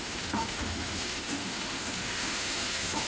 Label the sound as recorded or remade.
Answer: remade